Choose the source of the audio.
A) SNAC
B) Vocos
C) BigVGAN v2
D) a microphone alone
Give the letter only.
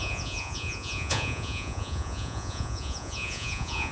B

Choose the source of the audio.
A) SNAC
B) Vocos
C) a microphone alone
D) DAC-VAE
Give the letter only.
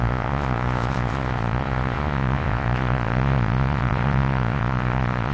B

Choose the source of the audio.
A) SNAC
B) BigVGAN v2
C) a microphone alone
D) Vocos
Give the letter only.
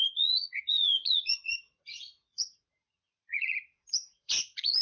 D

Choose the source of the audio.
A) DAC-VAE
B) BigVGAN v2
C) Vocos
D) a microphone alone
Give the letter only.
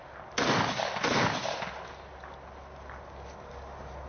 D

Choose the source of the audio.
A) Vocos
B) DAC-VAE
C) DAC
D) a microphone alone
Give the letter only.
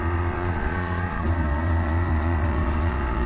A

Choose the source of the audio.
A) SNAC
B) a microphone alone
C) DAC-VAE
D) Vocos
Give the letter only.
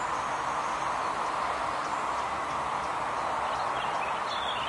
B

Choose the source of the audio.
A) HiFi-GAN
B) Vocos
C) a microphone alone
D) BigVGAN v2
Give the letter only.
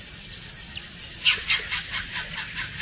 C